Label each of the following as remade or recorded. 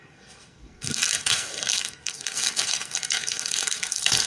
remade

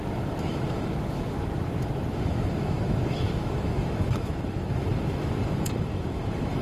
remade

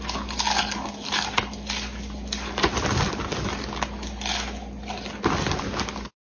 recorded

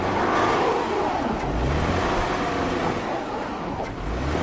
recorded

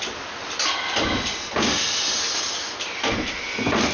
recorded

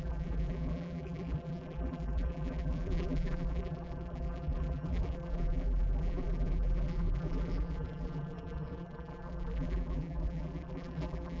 remade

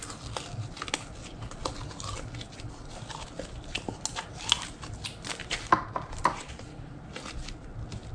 recorded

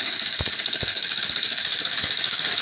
remade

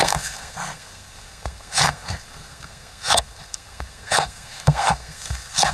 remade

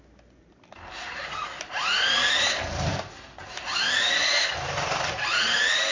recorded